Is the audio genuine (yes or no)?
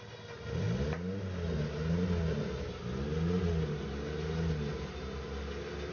yes